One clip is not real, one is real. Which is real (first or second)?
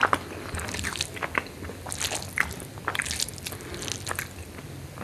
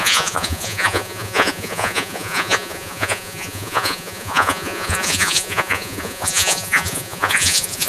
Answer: first